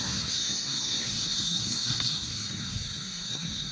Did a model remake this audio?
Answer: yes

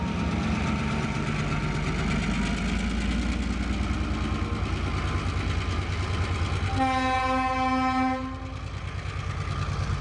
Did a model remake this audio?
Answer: no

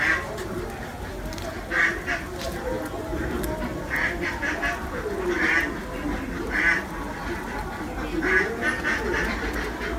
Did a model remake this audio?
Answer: no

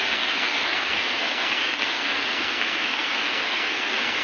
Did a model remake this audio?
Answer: yes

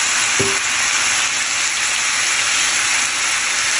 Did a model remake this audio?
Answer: no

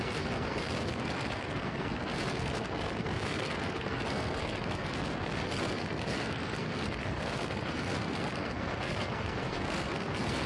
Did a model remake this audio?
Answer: yes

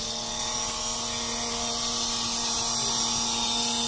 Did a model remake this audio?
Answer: no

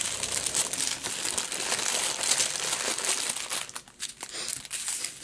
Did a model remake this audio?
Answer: no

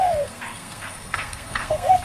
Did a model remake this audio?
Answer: yes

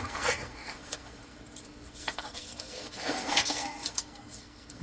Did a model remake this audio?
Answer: yes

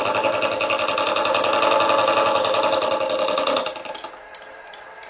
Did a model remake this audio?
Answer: no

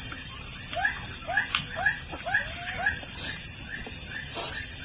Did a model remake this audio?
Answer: no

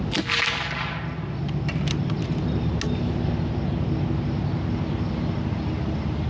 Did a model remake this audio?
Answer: no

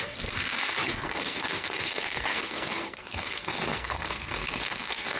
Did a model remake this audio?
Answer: yes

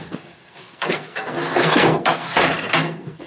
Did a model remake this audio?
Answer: yes